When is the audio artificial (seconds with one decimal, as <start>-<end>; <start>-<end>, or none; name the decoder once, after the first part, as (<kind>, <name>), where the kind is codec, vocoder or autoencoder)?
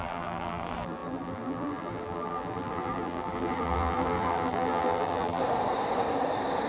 0.0-5.4 (vocoder, BigVGAN v2)